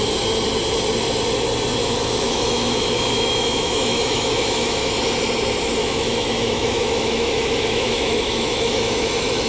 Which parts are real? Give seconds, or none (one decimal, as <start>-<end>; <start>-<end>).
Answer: 0.0-1.8; 4.9-5.8